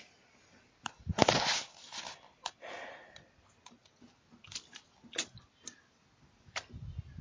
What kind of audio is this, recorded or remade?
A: recorded